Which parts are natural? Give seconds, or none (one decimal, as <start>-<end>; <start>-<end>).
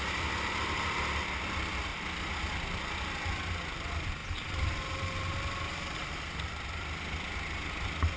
0.0-1.9; 3.5-8.2